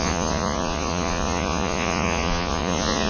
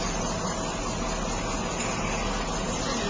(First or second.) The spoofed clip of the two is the first